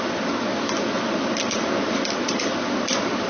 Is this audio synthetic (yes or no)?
no